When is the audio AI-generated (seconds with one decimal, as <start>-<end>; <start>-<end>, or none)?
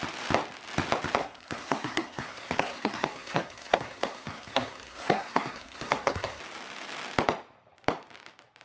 1.2-6.4